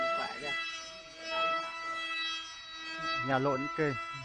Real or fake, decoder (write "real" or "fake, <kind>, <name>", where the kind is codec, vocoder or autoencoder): real